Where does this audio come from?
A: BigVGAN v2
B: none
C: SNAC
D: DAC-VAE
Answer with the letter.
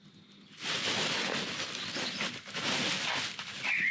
B